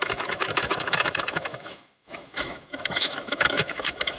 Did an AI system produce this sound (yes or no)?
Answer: yes